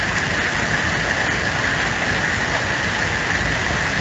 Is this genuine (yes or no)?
yes